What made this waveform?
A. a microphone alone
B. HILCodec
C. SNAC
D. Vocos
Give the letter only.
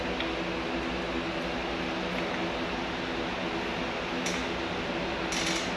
A